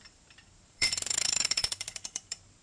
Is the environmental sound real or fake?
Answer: fake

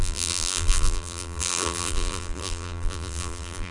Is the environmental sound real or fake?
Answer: fake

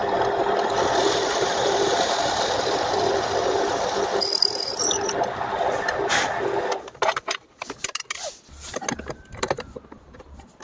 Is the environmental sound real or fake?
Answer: real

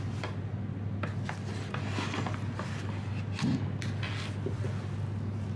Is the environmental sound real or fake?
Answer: real